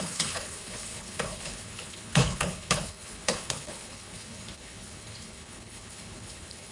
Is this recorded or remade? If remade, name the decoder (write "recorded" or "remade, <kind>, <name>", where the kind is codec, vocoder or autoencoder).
remade, codec, HILCodec